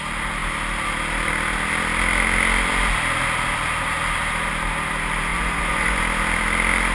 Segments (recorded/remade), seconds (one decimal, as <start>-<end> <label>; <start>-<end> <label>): 0.0-5.3 recorded; 5.3-6.0 remade; 6.0-6.9 recorded